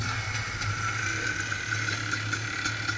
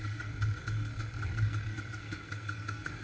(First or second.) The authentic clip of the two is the first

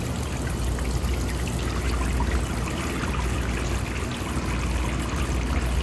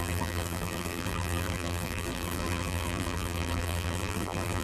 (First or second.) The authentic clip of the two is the first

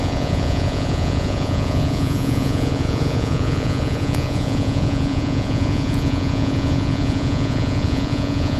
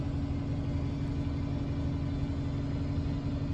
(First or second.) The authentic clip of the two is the second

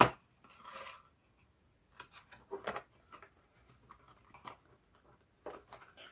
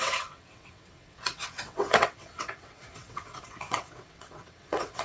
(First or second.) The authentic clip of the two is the first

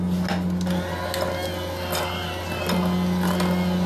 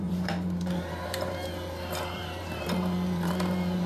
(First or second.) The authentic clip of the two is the first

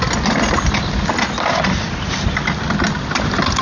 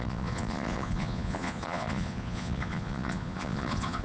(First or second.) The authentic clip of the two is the first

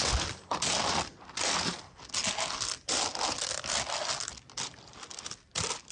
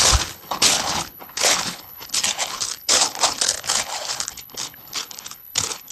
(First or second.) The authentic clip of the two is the first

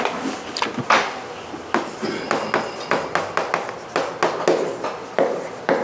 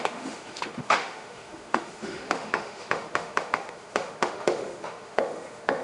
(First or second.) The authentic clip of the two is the first